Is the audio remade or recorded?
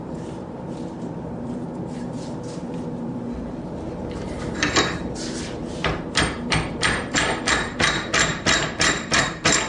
remade